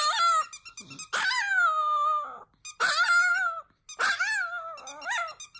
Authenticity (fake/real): real